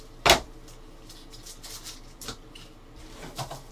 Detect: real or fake real